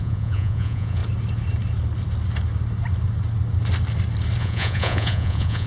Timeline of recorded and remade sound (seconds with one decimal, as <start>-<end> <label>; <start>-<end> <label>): 0.0-1.0 remade; 1.0-4.4 recorded; 4.4-5.7 remade